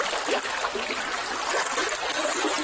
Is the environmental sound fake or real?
real